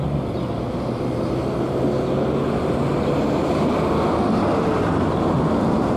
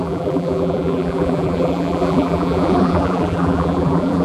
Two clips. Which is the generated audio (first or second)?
second